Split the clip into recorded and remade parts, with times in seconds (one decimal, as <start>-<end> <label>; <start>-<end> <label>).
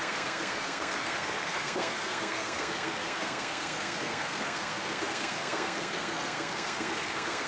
0.0-7.5 remade